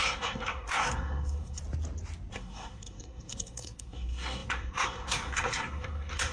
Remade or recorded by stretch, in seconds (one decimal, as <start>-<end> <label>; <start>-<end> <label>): 0.0-1.6 remade; 1.6-2.3 recorded; 2.3-6.3 remade